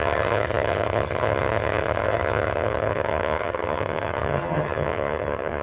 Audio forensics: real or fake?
fake